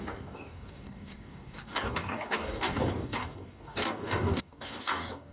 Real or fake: fake